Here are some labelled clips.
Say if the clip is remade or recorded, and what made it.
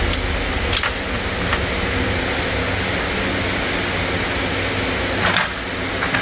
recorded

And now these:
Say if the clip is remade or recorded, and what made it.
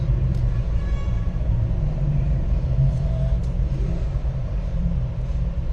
remade, vocoder, BigVGAN v2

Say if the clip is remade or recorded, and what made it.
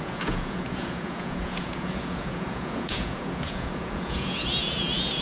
remade, vocoder, Vocos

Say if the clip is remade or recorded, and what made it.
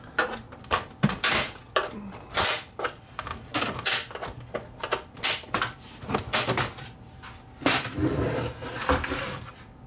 recorded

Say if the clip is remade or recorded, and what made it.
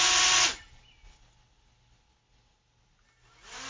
recorded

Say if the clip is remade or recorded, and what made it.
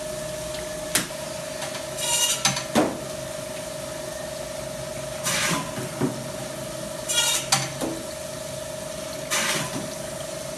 recorded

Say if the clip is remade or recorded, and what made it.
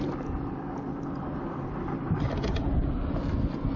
recorded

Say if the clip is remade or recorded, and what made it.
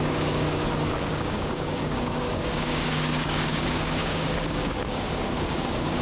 remade, codec, DAC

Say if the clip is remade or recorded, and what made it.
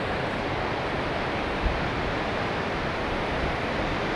recorded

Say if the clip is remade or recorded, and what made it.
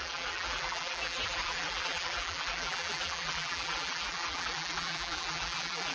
remade, vocoder, BigVGAN v2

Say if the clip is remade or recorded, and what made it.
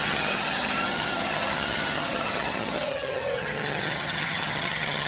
remade, vocoder, HiFi-GAN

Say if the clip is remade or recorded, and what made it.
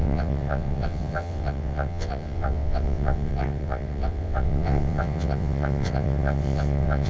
remade, vocoder, WaveNeXt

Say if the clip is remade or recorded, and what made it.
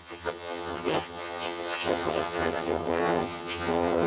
remade, vocoder, HiFi-GAN